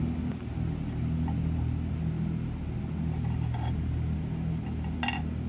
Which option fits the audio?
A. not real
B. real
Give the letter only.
B